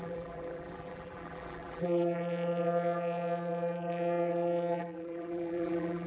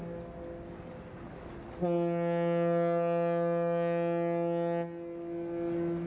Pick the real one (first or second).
second